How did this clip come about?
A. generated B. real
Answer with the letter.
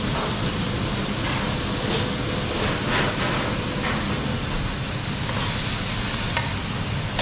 B